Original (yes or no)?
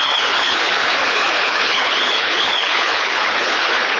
no